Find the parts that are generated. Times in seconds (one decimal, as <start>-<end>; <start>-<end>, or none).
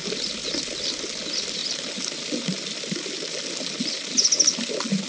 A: none